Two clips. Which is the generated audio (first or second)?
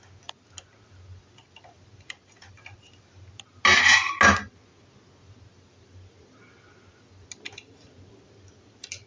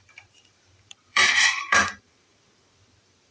second